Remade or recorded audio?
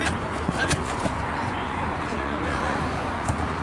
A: remade